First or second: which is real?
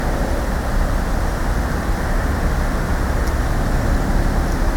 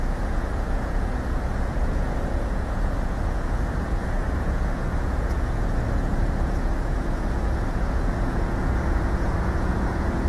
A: first